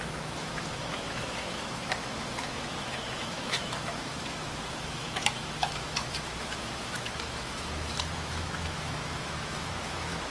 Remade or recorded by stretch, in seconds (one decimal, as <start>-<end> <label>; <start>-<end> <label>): 0.0-10.3 remade